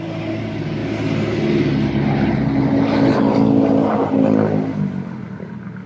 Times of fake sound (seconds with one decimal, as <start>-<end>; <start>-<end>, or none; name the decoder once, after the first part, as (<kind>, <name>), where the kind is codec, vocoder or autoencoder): none